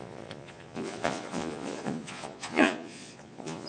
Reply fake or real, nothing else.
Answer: fake